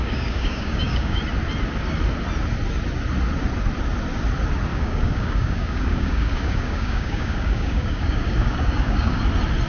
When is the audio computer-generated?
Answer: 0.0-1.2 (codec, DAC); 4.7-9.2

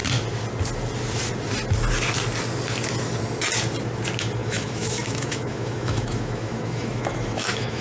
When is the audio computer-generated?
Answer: 4.4-7.8 (autoencoder, DAC-VAE)

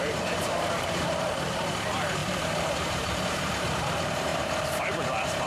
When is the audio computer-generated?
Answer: 0.0-5.5 (vocoder, BigVGAN v2)

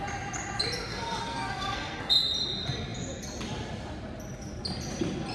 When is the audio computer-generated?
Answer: 0.9-2.0 (codec, SNAC)